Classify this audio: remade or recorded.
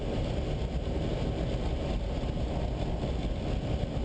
recorded